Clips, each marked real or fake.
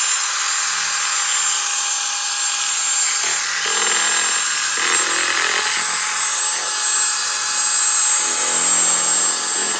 real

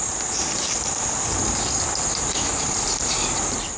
real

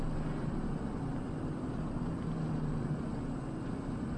real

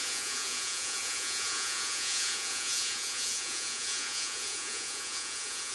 fake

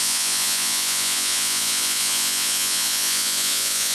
fake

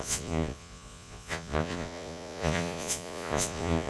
fake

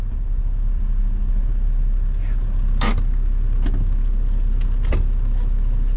real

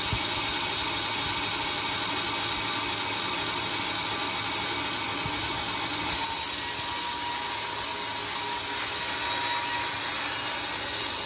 real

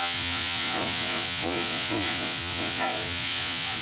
fake